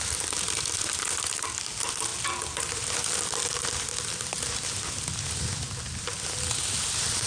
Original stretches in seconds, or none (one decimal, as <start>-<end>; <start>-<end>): 0.0-7.3